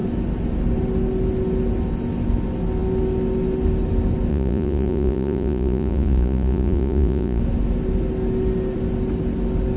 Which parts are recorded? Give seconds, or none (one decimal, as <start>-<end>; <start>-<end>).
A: 0.0-4.3; 7.4-9.8